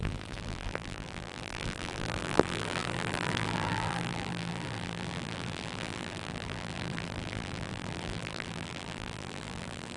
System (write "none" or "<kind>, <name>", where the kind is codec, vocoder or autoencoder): vocoder, BigVGAN v2